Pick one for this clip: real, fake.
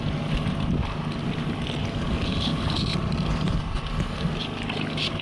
real